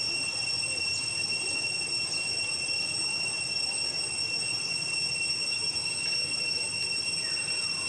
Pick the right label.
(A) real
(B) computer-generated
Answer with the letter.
A